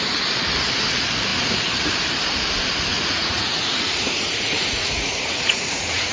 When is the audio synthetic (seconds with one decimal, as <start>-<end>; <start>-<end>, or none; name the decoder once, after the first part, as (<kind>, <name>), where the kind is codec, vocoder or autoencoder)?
2.9-6.1 (vocoder, Vocos)